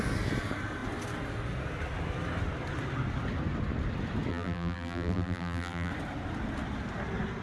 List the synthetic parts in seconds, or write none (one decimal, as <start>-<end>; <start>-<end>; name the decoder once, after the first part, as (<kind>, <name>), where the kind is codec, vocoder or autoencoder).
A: 4.3-5.9 (vocoder, BigVGAN v2)